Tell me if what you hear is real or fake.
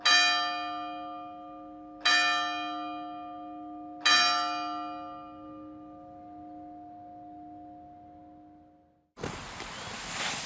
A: real